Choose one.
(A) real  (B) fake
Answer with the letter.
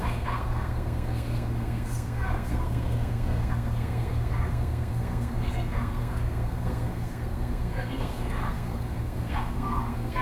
B